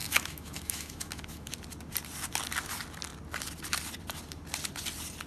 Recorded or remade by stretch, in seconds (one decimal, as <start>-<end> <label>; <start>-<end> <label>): 0.0-1.5 remade; 1.5-5.3 recorded